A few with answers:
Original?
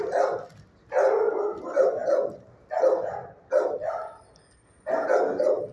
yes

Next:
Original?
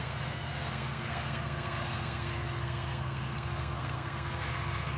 no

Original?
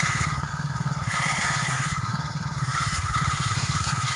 no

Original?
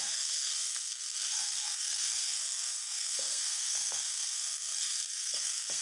no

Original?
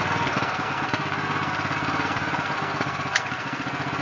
no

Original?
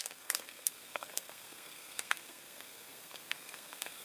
no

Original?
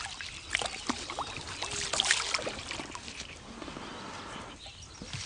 yes